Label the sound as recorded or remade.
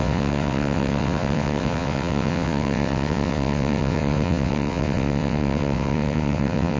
remade